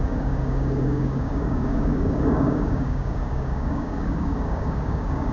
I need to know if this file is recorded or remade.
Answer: remade